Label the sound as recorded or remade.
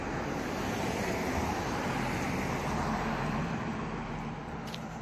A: recorded